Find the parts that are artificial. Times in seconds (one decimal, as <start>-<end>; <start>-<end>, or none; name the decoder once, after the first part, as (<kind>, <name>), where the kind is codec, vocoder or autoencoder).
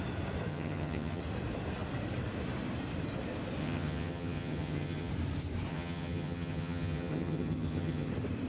0.5-1.2 (vocoder, HiFi-GAN); 3.6-5.1; 5.7-8.1